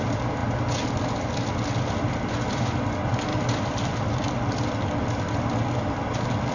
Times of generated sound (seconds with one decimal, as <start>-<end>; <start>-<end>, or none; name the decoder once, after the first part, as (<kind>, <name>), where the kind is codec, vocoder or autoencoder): 3.3-4.5 (vocoder, BigVGAN v2)